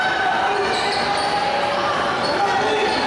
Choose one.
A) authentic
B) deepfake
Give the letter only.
A